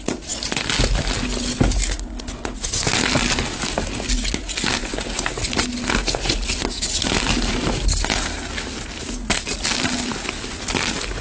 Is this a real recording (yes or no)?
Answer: yes